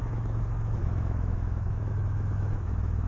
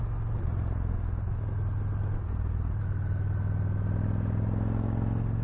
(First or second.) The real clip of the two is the second